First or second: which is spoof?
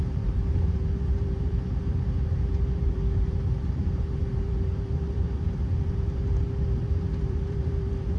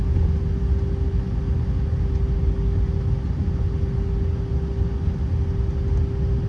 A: first